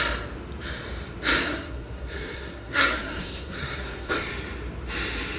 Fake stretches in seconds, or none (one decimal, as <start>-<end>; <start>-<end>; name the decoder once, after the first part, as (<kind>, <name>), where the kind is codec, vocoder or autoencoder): 1.4-4.1 (codec, SNAC)